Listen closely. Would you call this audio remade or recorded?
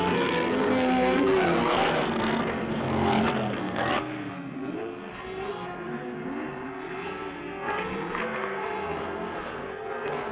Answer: remade